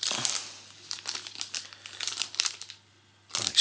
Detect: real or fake real